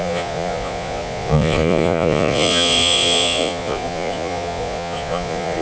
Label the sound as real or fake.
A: fake